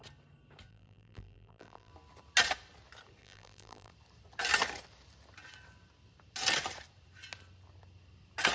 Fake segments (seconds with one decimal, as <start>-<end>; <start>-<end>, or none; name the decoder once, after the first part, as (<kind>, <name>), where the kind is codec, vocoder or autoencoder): 0.7-1.9 (vocoder, BigVGAN v2); 3.2-3.9